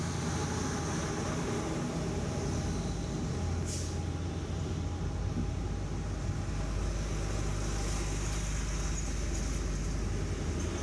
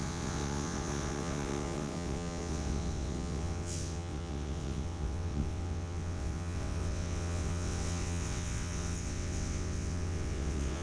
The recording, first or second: first